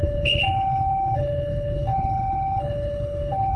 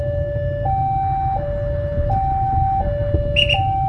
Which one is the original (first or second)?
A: second